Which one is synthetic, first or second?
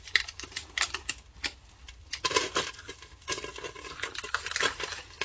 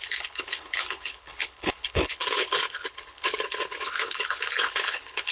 second